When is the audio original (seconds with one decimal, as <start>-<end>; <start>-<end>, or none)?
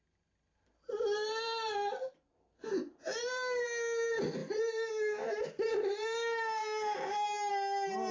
0.0-6.6; 7.5-8.1